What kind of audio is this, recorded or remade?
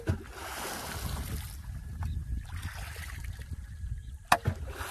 recorded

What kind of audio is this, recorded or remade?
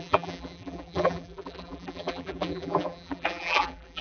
remade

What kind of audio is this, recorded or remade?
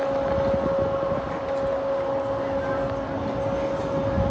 recorded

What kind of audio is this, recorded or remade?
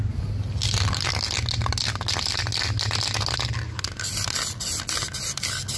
recorded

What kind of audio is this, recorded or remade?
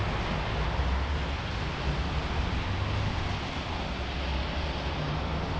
recorded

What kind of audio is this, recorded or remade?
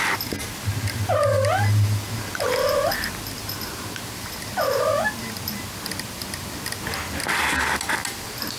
recorded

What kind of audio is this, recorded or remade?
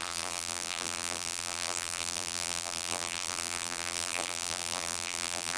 remade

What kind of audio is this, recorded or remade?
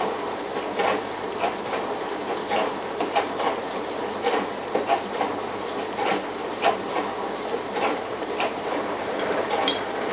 remade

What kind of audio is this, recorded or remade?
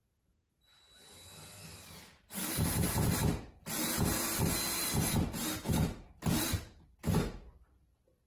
recorded